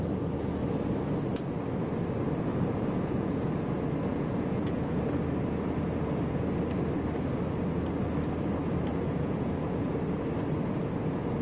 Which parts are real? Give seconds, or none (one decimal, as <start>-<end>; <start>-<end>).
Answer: 0.0-2.5; 3.5-4.1; 5.0-8.9; 9.9-11.4